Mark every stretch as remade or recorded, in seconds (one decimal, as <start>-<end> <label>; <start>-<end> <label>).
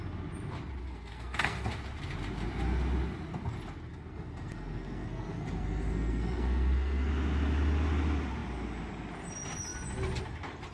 0.0-0.8 recorded; 0.8-1.7 remade; 1.7-3.9 recorded; 3.9-7.1 remade; 7.1-10.7 recorded